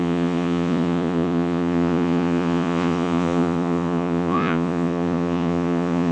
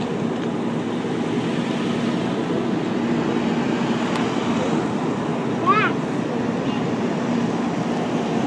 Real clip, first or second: second